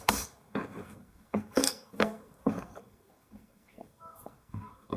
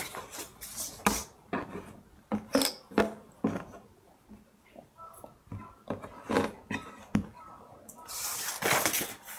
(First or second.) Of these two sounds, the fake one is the first